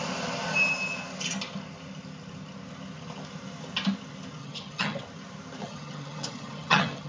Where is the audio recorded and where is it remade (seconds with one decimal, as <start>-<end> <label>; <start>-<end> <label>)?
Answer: 0.0-4.4 recorded; 4.4-5.0 remade; 5.0-5.6 recorded; 5.6-7.1 remade